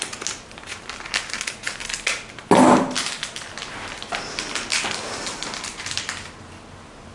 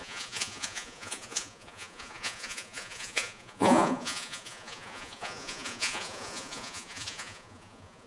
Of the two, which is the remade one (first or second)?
second